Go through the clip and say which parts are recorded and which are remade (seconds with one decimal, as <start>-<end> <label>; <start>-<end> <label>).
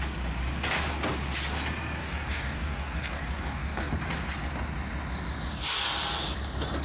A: 0.0-2.0 recorded; 2.0-3.9 remade; 3.9-6.8 recorded